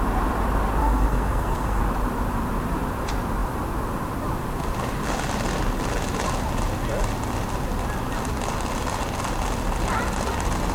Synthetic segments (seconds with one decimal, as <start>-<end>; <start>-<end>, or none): 0.8-1.8